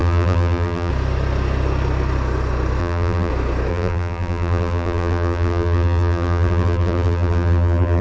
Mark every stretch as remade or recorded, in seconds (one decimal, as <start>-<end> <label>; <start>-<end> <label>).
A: 0.0-0.9 remade; 0.9-2.8 recorded; 2.8-3.3 remade; 3.3-3.7 recorded; 3.7-8.0 remade